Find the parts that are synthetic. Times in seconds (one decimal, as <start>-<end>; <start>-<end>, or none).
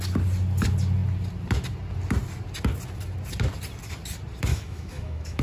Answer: 4.5-5.4